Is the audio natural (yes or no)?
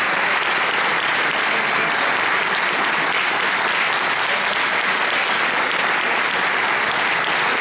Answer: yes